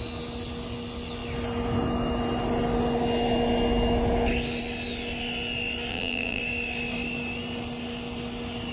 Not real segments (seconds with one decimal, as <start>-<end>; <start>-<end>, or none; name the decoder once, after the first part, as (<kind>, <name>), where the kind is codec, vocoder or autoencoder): 5.9-6.4 (vocoder, BigVGAN v2)